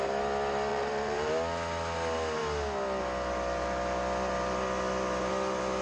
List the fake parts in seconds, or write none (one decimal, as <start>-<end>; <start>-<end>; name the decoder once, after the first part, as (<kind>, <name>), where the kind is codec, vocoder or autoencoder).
0.7-1.3 (vocoder, BigVGAN v2)